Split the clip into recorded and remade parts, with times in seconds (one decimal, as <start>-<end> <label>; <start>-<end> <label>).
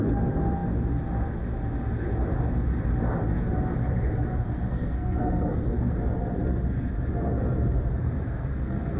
0.0-4.3 recorded; 4.3-6.0 remade; 6.0-8.0 recorded; 8.0-9.0 remade